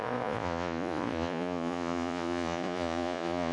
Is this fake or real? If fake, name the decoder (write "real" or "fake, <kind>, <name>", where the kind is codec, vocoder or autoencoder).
fake, vocoder, Vocos